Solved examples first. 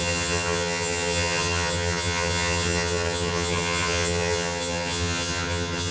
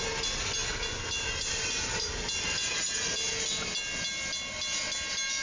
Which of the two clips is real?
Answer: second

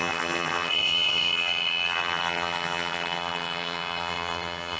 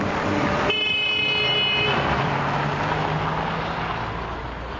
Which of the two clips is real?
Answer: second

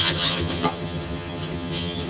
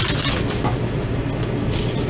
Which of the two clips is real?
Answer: second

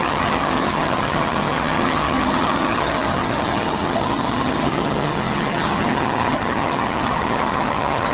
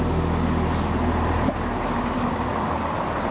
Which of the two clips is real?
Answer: second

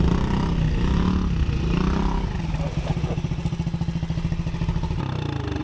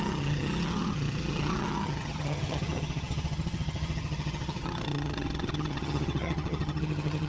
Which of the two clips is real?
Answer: first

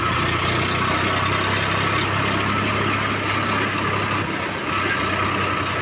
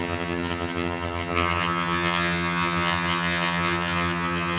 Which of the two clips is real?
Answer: first